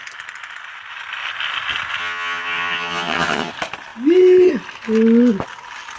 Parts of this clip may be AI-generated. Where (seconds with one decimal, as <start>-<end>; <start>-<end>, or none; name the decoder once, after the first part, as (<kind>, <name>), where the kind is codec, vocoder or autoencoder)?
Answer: 2.0-3.5 (vocoder, HiFi-GAN)